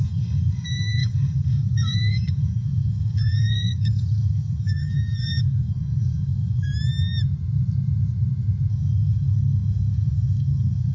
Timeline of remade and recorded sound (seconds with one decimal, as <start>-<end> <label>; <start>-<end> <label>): 0.0-6.7 remade; 6.7-8.7 recorded; 8.7-10.9 remade